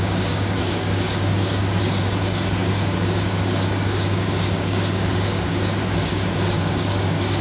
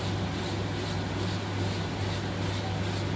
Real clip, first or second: second